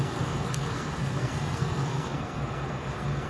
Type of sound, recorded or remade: remade